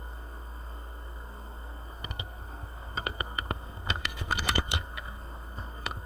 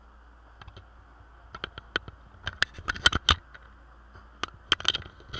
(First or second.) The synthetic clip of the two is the first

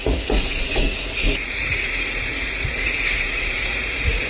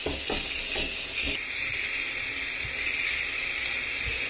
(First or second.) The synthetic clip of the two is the first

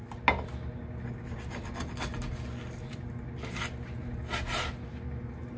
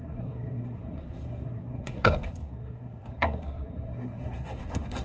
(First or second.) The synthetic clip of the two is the second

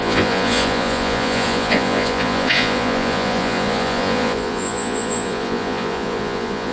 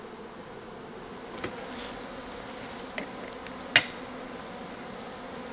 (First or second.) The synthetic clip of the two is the first